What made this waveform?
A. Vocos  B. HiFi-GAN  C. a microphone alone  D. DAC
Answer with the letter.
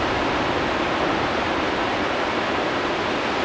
C